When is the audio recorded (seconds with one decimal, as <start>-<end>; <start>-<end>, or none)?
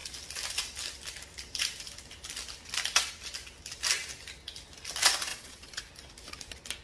0.0-5.3; 5.8-6.8